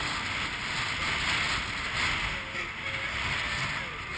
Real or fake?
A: real